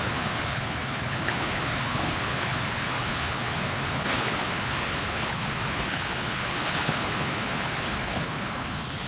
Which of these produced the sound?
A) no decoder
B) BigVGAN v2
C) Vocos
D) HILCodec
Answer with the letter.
D